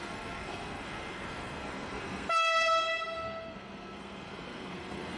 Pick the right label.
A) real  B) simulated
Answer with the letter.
B